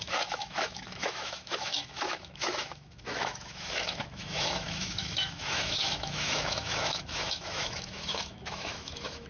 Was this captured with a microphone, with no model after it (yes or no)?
no